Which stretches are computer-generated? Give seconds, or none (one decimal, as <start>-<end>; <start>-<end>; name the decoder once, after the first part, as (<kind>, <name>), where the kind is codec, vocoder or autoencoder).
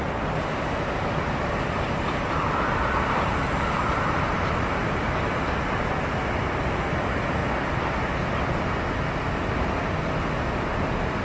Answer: none